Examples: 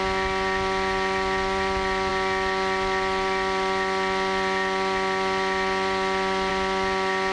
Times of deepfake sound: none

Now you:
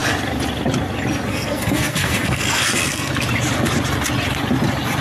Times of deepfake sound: 1.3-3.1 (codec, SNAC)

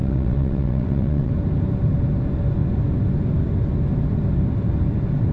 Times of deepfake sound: 0.0-1.3 (vocoder, WaveNeXt)

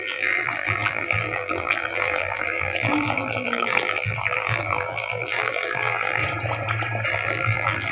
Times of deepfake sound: 0.0-6.2 (vocoder, BigVGAN v2); 7.1-7.9

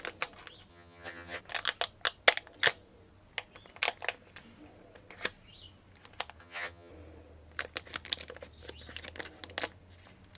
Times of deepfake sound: 0.7-1.4 (vocoder, HiFi-GAN); 6.4-6.9

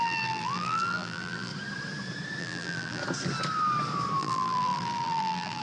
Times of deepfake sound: 0.0-1.5 (vocoder, BigVGAN v2); 2.4-3.0; 4.2-5.6